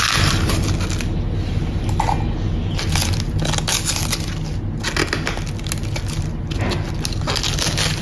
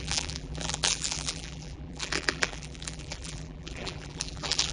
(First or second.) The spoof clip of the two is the second